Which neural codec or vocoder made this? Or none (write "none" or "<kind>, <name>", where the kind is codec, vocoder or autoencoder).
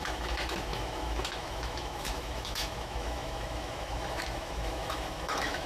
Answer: autoencoder, DAC-VAE